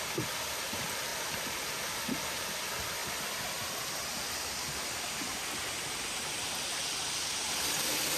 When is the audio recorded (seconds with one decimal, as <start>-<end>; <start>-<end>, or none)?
0.0-8.2